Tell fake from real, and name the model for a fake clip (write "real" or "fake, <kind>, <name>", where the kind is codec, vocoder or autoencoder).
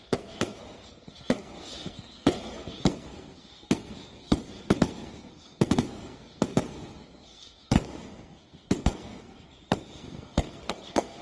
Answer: fake, codec, SNAC